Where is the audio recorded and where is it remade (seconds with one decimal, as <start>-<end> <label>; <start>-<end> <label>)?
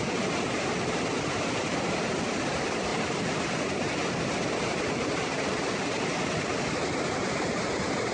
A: 0.0-8.1 recorded